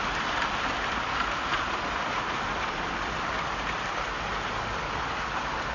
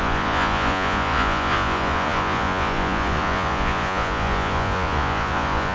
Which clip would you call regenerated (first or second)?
second